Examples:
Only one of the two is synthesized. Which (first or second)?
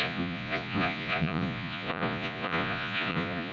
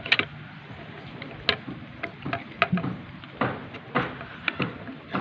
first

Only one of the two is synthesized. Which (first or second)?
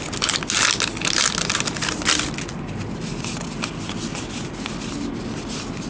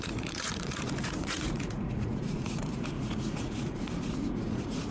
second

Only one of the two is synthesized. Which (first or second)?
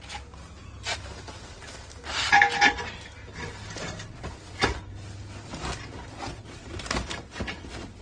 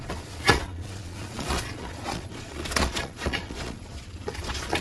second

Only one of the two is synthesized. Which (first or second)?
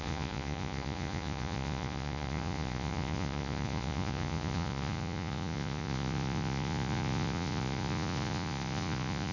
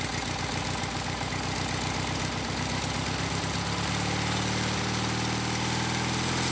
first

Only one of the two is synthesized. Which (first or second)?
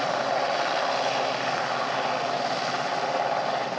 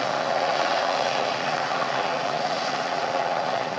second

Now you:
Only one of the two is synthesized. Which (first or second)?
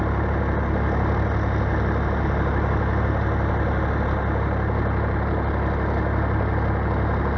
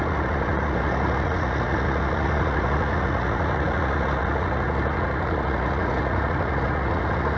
second